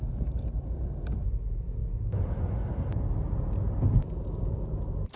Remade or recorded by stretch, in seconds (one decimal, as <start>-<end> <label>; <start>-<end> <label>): 0.0-5.2 recorded